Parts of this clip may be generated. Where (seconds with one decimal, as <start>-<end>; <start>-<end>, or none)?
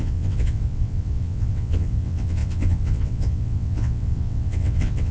0.0-5.1